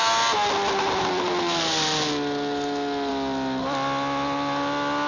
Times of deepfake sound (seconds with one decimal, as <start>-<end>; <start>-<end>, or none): none